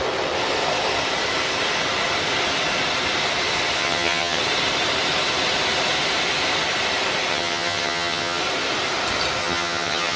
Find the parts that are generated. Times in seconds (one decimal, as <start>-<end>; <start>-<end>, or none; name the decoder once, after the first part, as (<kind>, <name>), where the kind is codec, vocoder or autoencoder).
3.8-4.4 (vocoder, HiFi-GAN); 7.3-8.4; 9.4-10.2